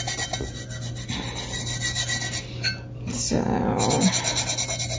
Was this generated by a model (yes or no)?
no